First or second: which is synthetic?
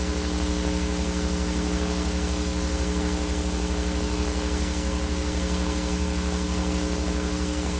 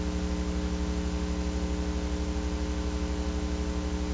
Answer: first